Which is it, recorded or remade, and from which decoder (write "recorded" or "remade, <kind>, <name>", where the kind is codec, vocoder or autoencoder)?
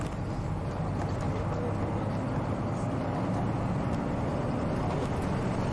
recorded